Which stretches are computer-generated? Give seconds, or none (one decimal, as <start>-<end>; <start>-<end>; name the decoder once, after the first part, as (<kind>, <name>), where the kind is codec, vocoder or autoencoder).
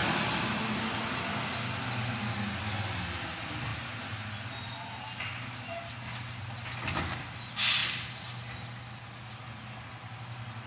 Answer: none